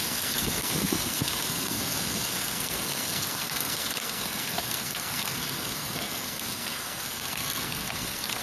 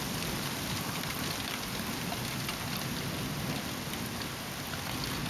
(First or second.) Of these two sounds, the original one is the second